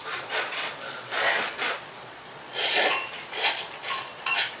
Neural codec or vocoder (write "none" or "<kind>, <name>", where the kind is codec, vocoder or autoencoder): vocoder, Vocos